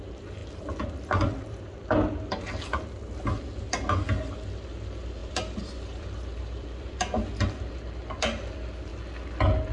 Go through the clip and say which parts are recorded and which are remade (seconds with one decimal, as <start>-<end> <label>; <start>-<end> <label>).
0.0-5.2 recorded; 5.2-6.9 remade; 6.9-9.7 recorded